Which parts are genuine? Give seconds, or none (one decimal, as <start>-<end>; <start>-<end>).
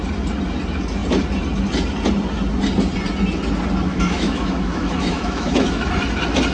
0.0-3.9; 5.9-6.5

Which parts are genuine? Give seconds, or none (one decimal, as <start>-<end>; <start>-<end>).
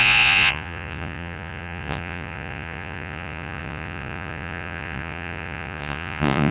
none